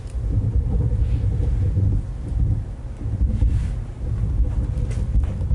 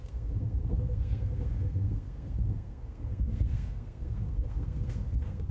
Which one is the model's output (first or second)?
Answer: second